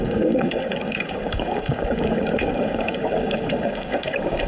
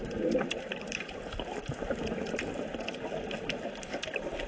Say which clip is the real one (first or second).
second